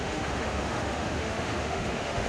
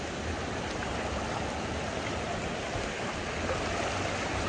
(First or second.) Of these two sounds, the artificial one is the first